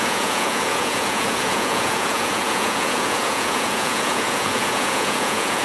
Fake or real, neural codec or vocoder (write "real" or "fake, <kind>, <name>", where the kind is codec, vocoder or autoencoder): fake, vocoder, Vocos